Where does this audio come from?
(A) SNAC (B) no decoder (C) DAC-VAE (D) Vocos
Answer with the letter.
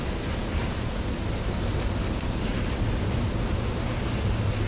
B